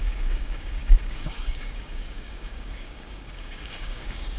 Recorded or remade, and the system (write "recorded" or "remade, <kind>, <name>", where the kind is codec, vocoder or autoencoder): remade, codec, DAC